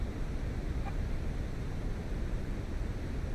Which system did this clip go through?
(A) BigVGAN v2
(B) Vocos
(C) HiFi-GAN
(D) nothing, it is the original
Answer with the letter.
D